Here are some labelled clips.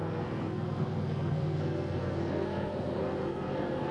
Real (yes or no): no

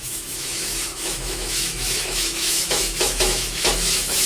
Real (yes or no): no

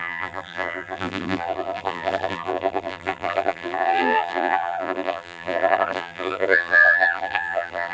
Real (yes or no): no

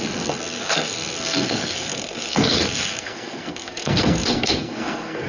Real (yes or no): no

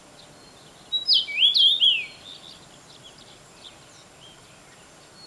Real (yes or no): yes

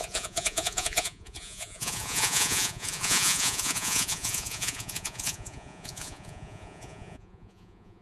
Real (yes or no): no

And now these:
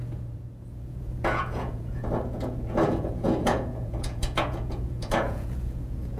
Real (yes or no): no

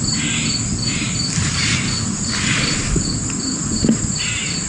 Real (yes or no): yes